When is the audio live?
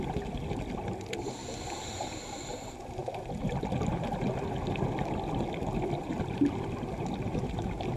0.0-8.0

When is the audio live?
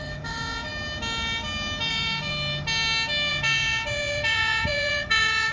0.7-1.9; 2.3-3.3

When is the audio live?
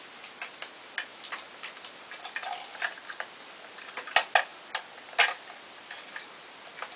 0.0-1.1; 1.7-7.0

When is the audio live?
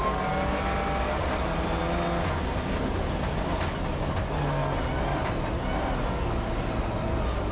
0.0-7.5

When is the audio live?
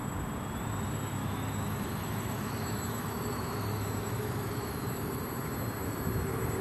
0.0-1.2; 5.2-6.6